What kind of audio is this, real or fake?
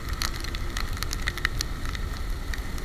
real